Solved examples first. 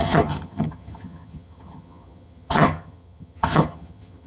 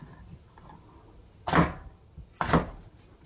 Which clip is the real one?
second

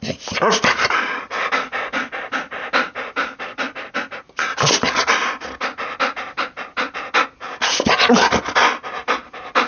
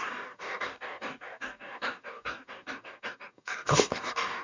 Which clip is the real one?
first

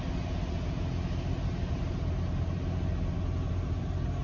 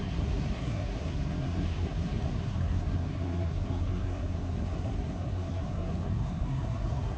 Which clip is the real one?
first